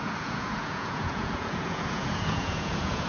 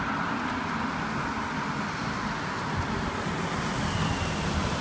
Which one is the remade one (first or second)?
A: first